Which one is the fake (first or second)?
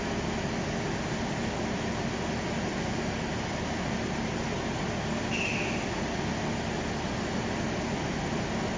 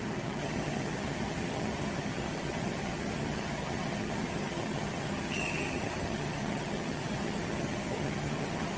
second